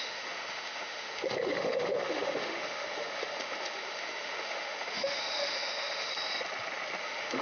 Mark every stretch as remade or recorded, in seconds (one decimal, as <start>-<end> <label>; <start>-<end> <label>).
0.0-6.1 remade; 6.1-7.0 recorded; 7.0-7.4 remade